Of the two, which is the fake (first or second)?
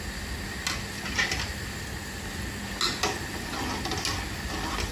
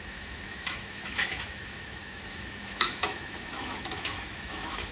second